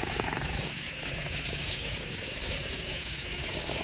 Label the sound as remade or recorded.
remade